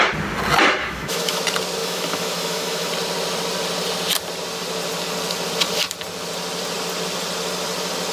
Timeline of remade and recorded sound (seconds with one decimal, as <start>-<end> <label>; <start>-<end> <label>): 0.0-0.8 recorded; 0.8-1.4 remade; 1.4-1.8 recorded; 1.8-2.9 remade; 2.9-8.1 recorded

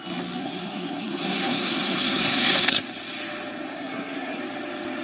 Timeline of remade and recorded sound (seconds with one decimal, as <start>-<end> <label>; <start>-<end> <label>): 0.0-0.4 recorded; 0.4-2.8 remade; 2.8-3.7 recorded; 3.7-4.4 remade; 4.4-5.0 recorded